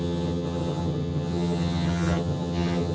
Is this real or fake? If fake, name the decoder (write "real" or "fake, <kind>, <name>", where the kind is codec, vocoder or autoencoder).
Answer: fake, vocoder, HiFi-GAN